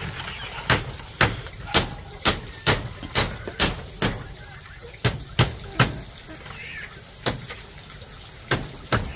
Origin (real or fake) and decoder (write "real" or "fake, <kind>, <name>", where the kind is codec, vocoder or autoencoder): real